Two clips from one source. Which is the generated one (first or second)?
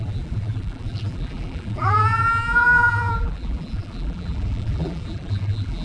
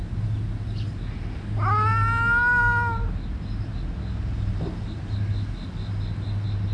first